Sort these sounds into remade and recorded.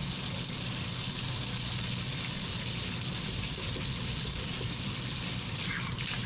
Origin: recorded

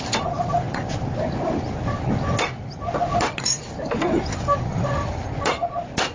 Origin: recorded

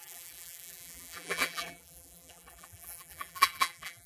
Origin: remade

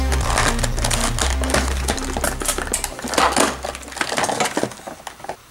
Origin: recorded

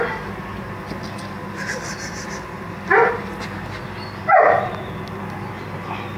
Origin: recorded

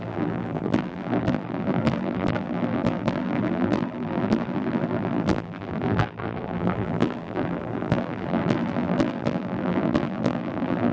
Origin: remade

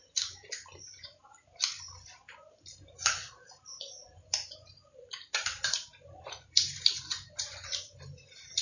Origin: remade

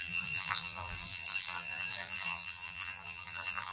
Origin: remade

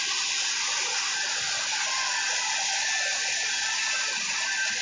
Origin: recorded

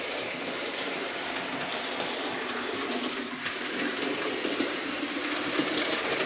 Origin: remade